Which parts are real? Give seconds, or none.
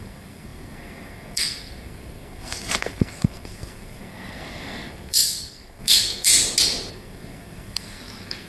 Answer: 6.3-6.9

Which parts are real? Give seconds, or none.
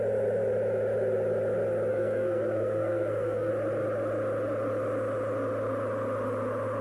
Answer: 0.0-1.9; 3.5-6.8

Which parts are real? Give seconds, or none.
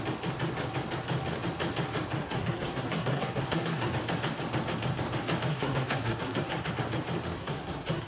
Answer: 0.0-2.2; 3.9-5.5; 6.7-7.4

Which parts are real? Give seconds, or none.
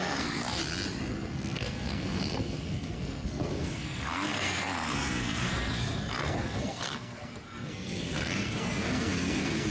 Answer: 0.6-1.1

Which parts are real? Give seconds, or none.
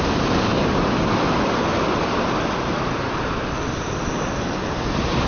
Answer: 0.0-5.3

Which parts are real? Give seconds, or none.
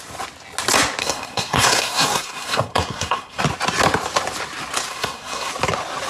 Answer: 0.0-1.0; 3.4-4.9; 5.5-6.1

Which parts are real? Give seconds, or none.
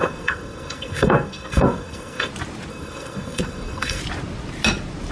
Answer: 2.3-2.7; 4.0-5.1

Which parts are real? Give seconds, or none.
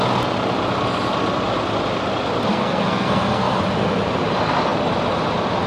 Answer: 0.0-2.5; 3.6-5.7